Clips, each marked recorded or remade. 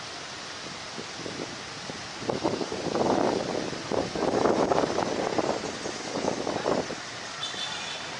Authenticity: recorded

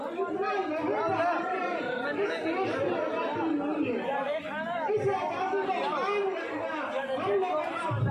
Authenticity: recorded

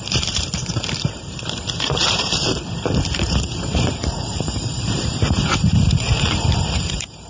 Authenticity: remade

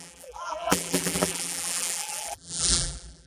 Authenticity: remade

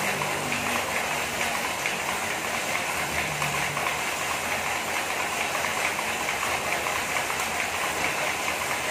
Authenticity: recorded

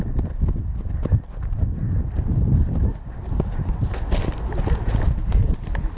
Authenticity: recorded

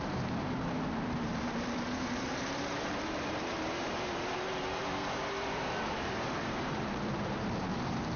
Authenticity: remade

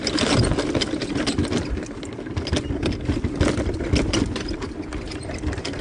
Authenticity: recorded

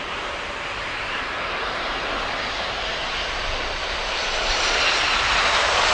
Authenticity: remade